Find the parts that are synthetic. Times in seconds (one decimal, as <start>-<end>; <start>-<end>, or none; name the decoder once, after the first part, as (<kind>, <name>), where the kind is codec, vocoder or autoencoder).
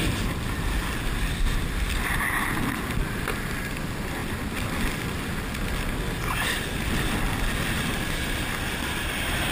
none